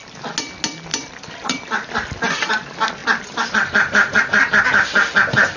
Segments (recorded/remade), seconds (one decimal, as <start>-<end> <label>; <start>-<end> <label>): 0.0-0.9 recorded; 0.9-1.9 remade; 1.9-3.0 recorded; 3.0-4.2 remade; 4.2-5.6 recorded